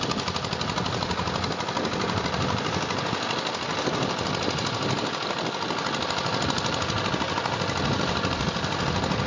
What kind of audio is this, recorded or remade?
recorded